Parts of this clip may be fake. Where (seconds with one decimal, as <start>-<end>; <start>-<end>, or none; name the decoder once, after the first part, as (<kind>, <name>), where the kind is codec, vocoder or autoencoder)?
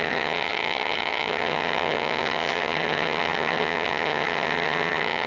0.0-5.3 (vocoder, HiFi-GAN)